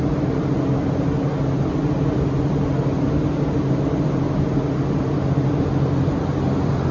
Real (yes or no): yes